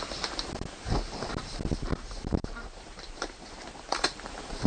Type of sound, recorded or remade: remade